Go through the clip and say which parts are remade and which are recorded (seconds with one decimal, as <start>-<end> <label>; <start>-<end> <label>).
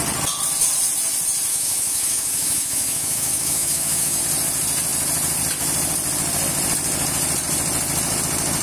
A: 0.0-1.5 recorded; 1.5-4.2 remade; 4.2-8.6 recorded